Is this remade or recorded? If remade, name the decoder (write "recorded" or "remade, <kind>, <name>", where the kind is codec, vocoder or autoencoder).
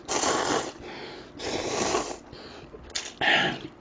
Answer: recorded